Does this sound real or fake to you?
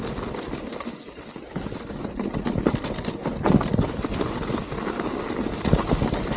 real